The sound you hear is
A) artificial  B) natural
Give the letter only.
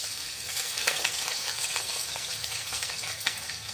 A